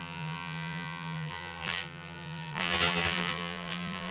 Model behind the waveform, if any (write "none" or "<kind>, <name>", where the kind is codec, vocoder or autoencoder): vocoder, BigVGAN v2